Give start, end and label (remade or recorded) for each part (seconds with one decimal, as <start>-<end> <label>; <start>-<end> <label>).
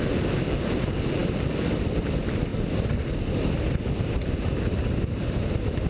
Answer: 0.0-2.5 remade; 2.5-5.9 recorded